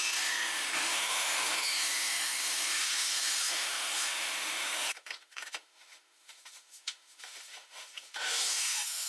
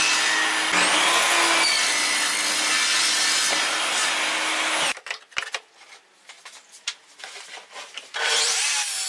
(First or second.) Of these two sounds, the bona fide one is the second